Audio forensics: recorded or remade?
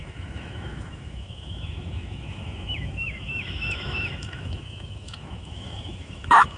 remade